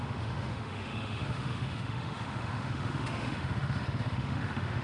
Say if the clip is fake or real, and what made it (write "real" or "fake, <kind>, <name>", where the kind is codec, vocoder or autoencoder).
fake, autoencoder, DAC-VAE